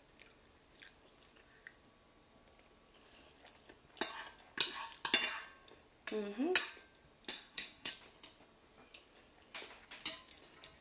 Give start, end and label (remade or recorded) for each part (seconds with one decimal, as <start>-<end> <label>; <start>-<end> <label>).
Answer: 0.0-7.3 recorded; 7.3-7.9 remade; 7.9-10.8 recorded